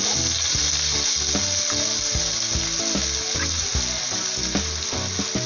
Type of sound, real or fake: real